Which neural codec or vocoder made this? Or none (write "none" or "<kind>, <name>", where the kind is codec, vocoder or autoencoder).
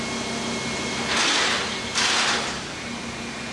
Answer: none